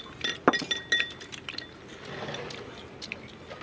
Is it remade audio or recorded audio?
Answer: recorded